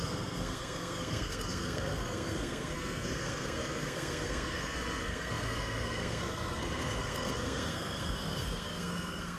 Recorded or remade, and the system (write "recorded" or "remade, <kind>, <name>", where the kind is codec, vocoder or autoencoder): remade, codec, SNAC